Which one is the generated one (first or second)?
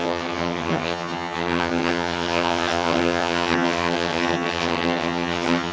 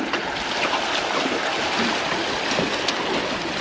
first